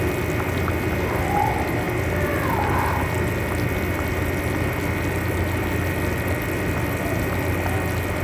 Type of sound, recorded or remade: recorded